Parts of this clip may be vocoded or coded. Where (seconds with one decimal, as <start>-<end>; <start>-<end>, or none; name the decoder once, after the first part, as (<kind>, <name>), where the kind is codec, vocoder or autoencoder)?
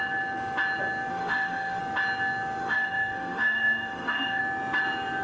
1.1-1.8 (autoencoder, DAC-VAE); 2.6-4.4